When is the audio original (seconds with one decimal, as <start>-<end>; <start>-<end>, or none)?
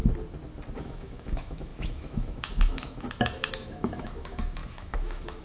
0.0-0.8